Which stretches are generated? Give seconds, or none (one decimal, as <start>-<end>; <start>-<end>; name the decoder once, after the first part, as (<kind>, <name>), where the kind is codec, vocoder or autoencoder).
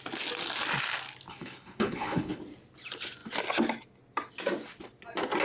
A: 1.3-2.4 (codec, HILCodec)